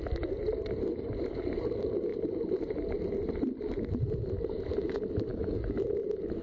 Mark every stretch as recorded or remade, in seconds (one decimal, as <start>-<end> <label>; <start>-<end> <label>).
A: 0.0-5.3 recorded; 5.3-5.8 remade; 5.8-6.4 recorded